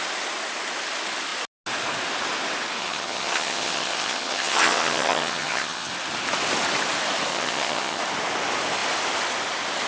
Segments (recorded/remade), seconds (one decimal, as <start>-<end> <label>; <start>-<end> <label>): 0.0-2.8 recorded; 2.8-5.9 remade; 5.9-7.3 recorded; 7.3-8.0 remade; 8.0-9.9 recorded